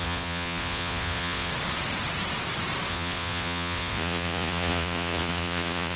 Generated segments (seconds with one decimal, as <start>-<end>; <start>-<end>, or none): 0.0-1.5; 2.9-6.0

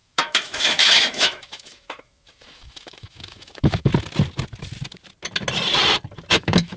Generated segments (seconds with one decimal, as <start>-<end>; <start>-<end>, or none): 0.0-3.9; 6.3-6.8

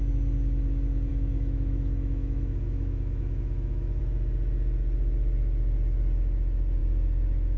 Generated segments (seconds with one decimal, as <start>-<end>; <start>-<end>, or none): 1.1-4.0

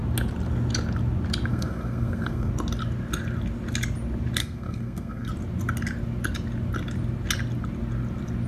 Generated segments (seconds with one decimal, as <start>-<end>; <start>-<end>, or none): 1.5-2.5; 4.4-5.3

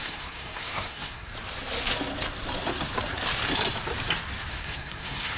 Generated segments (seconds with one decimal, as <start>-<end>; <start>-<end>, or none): 0.0-1.3; 4.5-5.4

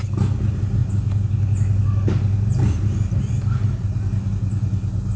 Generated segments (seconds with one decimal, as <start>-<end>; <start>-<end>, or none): none